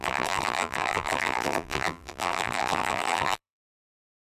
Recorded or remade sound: remade